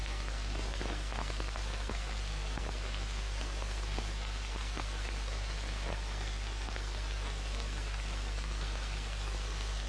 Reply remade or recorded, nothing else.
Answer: remade